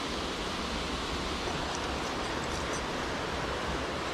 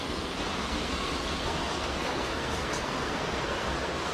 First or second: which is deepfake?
second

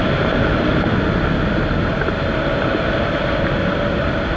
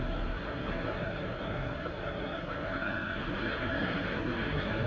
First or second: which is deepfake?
second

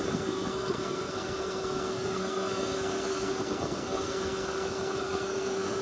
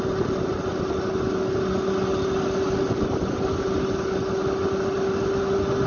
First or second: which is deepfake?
first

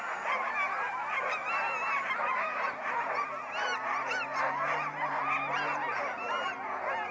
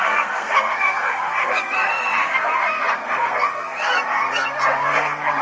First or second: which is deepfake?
second